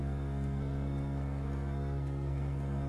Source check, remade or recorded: remade